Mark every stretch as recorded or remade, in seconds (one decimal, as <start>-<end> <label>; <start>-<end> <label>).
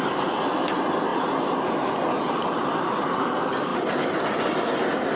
0.0-5.2 recorded